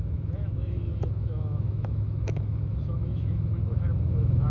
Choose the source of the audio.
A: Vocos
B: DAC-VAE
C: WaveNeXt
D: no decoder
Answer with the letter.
B